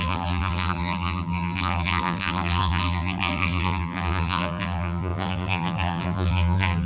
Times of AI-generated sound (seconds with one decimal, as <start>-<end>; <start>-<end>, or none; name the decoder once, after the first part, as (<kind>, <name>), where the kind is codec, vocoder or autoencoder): 0.0-6.9 (vocoder, BigVGAN v2)

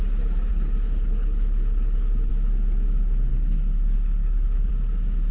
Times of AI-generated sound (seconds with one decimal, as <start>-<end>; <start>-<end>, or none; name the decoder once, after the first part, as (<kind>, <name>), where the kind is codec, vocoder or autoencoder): 0.5-2.3 (codec, HILCodec); 3.3-4.7

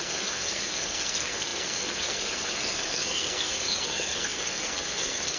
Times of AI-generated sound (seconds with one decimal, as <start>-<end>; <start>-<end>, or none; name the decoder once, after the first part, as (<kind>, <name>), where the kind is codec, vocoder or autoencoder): 0.0-5.4 (codec, SNAC)

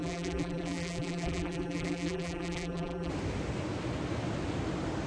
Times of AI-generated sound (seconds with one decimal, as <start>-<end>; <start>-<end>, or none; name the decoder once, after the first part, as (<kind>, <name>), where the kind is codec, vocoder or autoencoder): 0.0-3.1 (vocoder, BigVGAN v2)